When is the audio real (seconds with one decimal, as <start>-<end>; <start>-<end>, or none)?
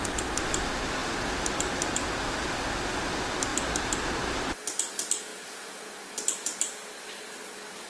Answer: 0.0-5.3; 5.9-7.9